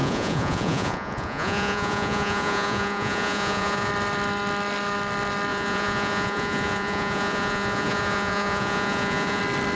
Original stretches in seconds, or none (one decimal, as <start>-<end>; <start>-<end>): 3.9-5.5; 9.4-9.8